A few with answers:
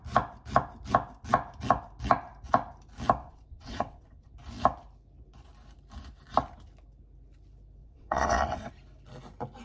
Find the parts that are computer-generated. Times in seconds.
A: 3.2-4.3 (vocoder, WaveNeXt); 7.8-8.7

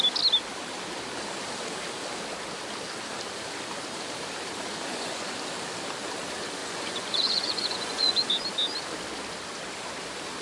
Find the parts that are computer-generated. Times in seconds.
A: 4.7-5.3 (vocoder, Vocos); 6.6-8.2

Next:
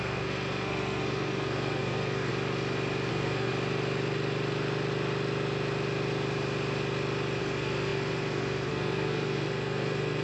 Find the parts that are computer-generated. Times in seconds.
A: 0.0-2.3 (codec, SNAC); 3.1-3.5; 7.4-10.2

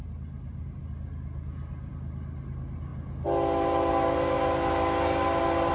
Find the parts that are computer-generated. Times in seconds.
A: none

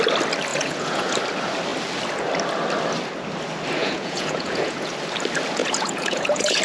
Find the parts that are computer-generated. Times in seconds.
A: 0.5-1.1 (vocoder, Vocos); 3.8-4.9; 5.6-6.6